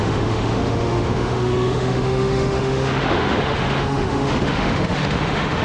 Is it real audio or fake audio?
fake